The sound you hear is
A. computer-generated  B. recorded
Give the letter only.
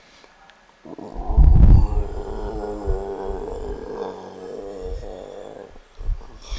B